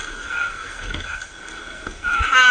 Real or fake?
fake